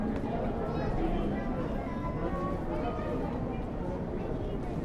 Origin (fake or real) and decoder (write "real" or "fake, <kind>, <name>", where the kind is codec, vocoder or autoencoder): real